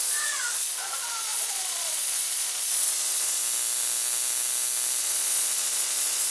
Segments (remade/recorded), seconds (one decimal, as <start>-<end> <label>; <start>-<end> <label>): 0.0-3.4 remade; 3.4-5.0 recorded; 5.0-6.3 remade